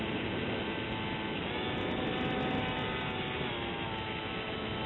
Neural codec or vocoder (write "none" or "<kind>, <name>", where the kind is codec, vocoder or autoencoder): none